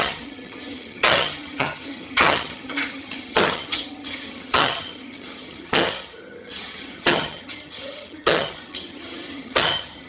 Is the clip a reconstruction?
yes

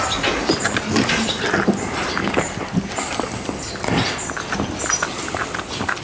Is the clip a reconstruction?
no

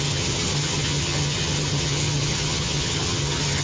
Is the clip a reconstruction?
yes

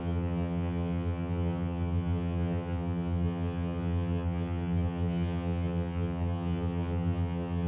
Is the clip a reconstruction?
yes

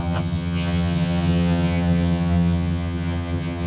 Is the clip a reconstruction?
yes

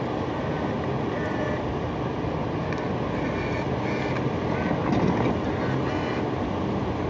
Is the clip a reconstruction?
no